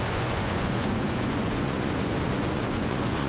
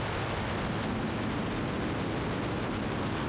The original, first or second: second